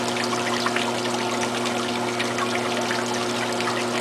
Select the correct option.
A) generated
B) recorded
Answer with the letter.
B